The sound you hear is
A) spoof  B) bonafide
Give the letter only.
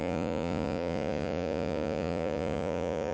A